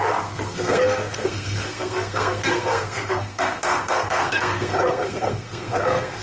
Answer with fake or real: fake